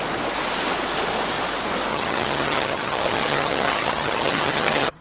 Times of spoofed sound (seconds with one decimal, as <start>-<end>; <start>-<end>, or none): 1.9-5.0